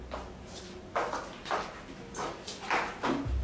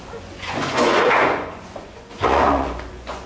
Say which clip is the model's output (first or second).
second